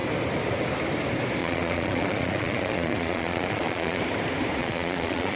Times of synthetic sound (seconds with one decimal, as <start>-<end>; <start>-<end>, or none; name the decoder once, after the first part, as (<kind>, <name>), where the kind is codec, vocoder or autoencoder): 1.4-4.0 (vocoder, Vocos); 4.6-5.4

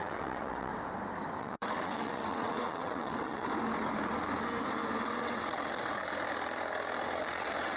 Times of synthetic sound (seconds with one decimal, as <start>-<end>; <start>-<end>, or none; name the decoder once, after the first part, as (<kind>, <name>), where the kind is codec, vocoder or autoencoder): 0.0-0.7 (vocoder, WaveNeXt); 1.4-3.5; 5.0-6.0; 7.2-7.8

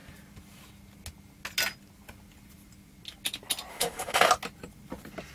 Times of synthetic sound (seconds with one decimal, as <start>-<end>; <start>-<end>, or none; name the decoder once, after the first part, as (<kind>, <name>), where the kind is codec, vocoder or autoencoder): 3.7-4.3 (autoencoder, DAC-VAE)

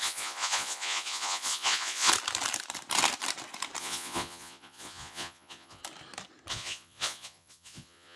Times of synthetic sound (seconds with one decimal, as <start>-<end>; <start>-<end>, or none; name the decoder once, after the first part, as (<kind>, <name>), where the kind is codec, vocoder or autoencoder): 0.0-2.1 (vocoder, Vocos); 3.8-5.8; 6.5-8.2